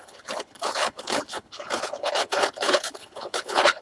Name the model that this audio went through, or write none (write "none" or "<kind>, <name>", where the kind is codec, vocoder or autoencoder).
codec, HILCodec